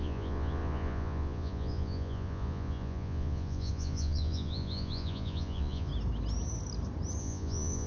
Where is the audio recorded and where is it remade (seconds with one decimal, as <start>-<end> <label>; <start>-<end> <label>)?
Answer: 0.0-5.9 remade; 5.9-7.2 recorded; 7.2-7.9 remade